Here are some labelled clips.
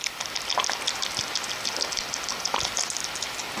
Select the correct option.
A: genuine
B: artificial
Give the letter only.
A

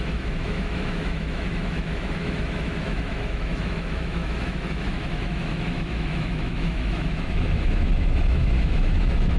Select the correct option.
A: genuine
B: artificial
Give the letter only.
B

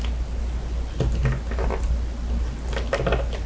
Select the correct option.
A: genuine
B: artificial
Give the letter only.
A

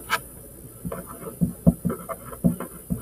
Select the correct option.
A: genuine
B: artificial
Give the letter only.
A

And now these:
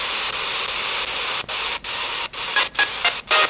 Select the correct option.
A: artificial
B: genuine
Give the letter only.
B